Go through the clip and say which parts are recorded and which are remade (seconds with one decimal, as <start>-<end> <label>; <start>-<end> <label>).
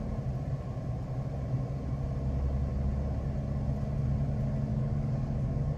0.0-4.7 recorded; 4.7-5.8 remade